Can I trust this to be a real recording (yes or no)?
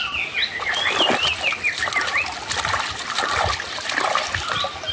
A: yes